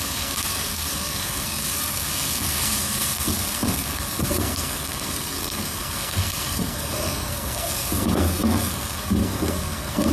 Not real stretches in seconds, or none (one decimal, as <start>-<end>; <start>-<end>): 0.0-10.1